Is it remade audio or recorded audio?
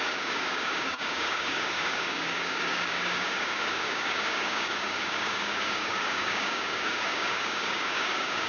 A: remade